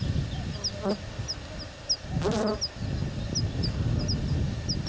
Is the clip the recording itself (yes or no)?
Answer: yes